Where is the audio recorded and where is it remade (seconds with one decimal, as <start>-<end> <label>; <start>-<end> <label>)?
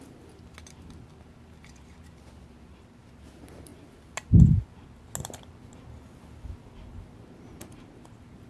0.0-8.5 recorded